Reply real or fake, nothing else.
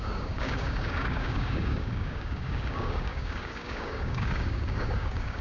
fake